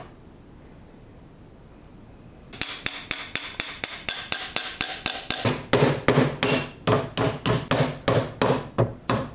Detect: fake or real real